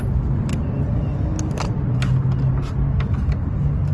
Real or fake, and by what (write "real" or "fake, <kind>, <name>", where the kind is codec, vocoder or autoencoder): real